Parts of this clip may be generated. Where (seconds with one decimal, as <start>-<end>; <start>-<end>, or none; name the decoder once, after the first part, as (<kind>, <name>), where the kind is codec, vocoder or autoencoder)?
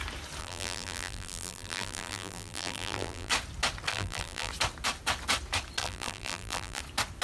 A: 0.4-3.3 (vocoder, BigVGAN v2); 3.9-4.5; 5.8-6.8